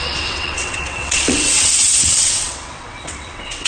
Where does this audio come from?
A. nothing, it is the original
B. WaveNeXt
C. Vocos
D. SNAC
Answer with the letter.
B